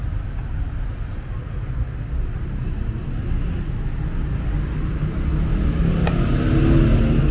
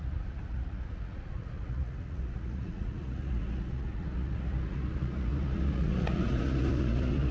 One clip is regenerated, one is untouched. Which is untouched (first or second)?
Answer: first